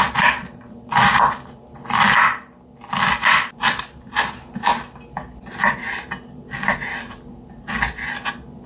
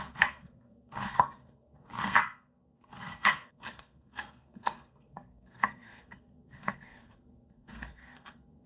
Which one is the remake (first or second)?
second